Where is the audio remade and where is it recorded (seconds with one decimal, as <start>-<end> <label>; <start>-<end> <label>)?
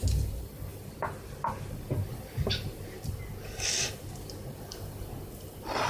0.0-5.9 recorded